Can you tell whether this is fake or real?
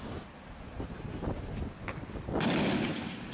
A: real